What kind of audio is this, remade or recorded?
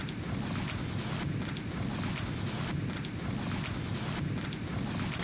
recorded